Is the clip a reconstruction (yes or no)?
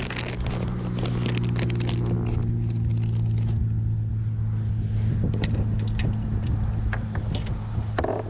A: no